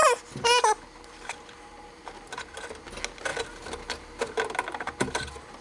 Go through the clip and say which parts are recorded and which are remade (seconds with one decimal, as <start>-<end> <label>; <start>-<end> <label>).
0.0-5.6 recorded